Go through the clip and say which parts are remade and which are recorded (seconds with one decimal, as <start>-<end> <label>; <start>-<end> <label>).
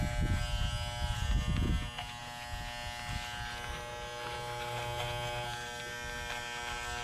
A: 0.0-7.0 recorded